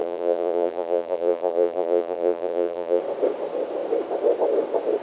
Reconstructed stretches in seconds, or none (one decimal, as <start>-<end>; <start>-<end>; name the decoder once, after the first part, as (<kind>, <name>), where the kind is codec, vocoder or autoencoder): 0.0-3.0 (vocoder, BigVGAN v2)